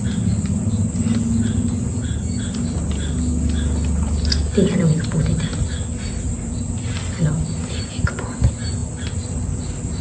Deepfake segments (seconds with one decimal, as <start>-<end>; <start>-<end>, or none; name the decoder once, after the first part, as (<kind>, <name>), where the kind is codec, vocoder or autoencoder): none